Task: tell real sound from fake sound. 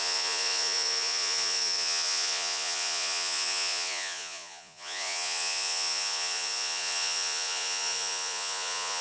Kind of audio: fake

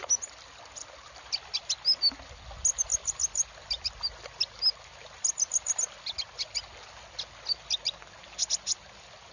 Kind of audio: real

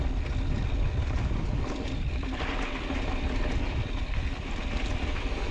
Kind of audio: real